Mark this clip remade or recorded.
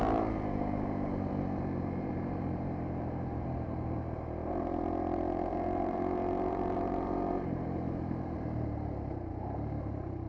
remade